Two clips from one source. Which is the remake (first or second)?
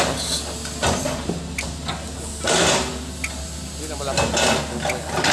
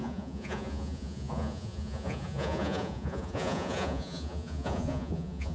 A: second